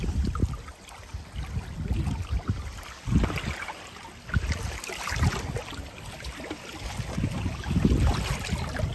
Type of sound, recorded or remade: recorded